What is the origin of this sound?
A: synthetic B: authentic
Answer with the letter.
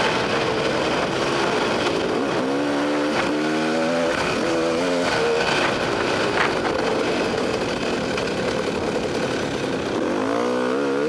B